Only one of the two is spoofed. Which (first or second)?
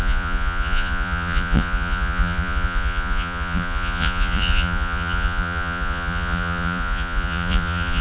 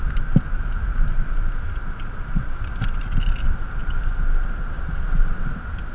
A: first